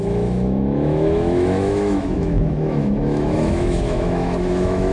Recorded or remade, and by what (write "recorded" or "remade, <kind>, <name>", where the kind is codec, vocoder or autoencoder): remade, autoencoder, DAC-VAE